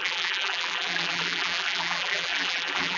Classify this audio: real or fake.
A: fake